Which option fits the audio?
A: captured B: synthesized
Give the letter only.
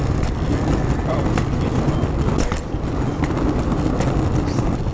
A